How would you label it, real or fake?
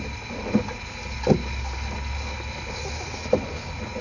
real